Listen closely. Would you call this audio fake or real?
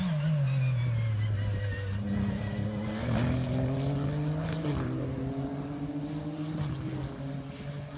real